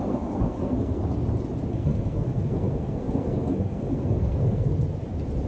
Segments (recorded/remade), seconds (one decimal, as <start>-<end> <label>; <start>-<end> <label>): 0.0-1.0 remade; 1.0-1.7 recorded; 1.7-4.7 remade; 4.7-5.5 recorded